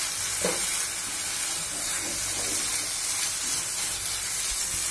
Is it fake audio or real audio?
real